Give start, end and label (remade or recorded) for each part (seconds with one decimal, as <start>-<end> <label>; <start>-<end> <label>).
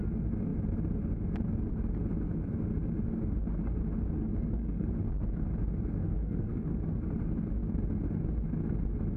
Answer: 0.0-4.2 recorded; 4.2-4.9 remade; 4.9-6.0 recorded; 6.0-6.8 remade; 6.8-9.2 recorded